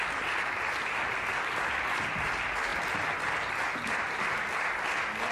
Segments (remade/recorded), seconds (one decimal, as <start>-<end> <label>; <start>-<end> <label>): 0.0-5.3 recorded